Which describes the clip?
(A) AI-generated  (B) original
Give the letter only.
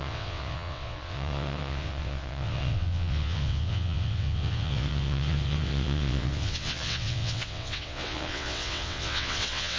A